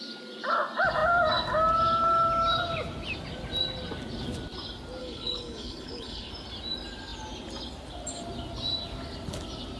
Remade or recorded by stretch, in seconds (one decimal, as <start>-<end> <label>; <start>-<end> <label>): 0.0-5.0 recorded; 5.0-6.3 remade; 6.3-9.8 recorded